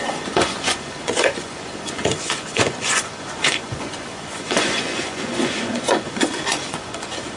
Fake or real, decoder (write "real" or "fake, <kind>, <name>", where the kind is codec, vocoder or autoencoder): fake, vocoder, Vocos